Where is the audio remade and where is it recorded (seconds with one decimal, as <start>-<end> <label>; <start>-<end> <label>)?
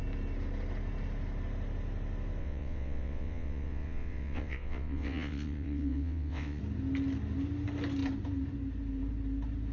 0.0-2.4 recorded; 2.4-6.6 remade; 6.6-9.7 recorded